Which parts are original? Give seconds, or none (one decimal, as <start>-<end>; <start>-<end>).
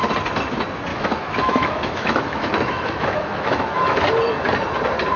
0.0-0.9; 4.0-5.2